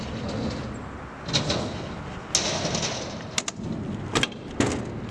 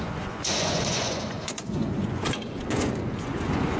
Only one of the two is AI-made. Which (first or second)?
second